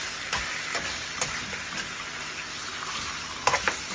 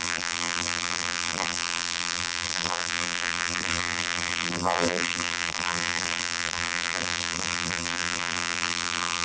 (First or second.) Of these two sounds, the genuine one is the first